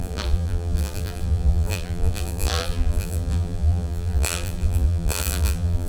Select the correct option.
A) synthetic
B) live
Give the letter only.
A